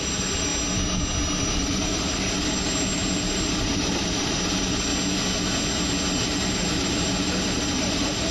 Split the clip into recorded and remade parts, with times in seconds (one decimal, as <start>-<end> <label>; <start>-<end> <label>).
0.0-0.5 remade; 0.5-1.4 recorded; 1.4-4.9 remade; 4.9-6.2 recorded; 6.2-8.3 remade